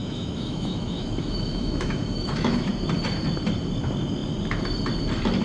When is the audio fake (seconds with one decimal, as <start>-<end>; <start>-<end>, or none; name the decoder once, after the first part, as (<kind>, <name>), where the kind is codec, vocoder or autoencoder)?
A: 0.0-2.7 (autoencoder, DAC-VAE)